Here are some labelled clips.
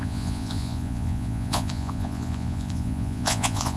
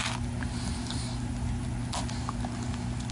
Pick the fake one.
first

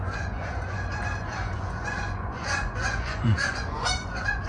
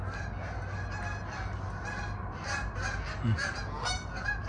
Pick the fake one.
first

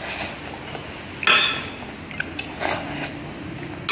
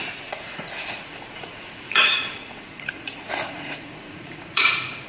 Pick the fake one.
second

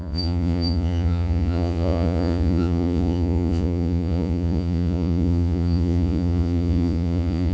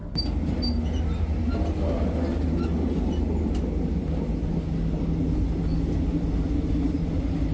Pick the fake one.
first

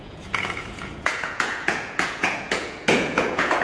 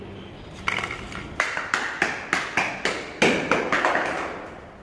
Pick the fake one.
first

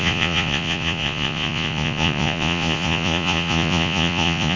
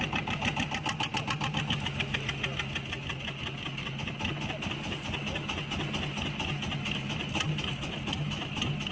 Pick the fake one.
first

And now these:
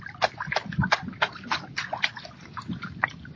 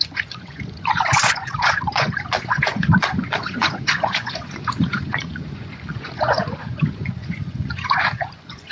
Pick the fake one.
second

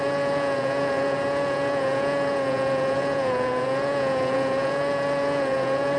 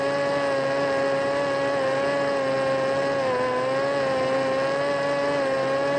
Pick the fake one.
first